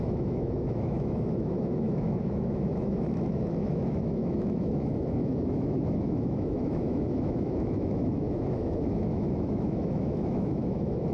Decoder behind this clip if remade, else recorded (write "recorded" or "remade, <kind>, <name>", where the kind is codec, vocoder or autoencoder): remade, autoencoder, DAC-VAE